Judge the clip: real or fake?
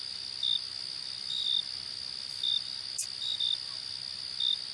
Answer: real